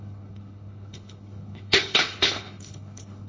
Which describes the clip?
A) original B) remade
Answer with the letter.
B